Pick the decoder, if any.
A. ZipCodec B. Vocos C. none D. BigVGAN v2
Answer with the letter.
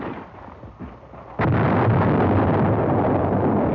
C